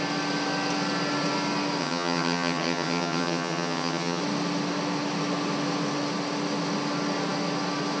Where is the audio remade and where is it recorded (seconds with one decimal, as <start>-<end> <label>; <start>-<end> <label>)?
0.0-1.8 recorded; 1.8-4.2 remade; 4.2-8.0 recorded